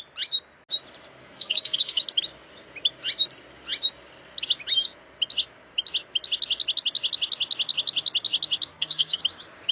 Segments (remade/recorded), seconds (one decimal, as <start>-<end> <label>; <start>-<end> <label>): 0.0-1.2 recorded; 1.2-2.0 remade; 2.0-8.7 recorded; 8.7-9.2 remade; 9.2-9.7 recorded